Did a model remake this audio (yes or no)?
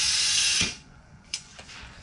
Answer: yes